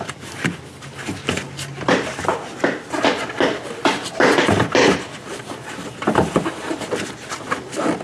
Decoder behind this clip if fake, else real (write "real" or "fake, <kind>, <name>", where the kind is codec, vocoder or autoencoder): real